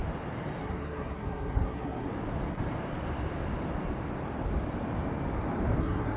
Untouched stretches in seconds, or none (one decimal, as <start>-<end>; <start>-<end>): 0.0-0.6; 2.1-5.8